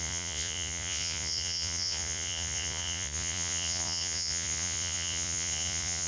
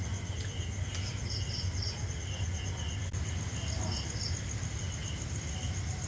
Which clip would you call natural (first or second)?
second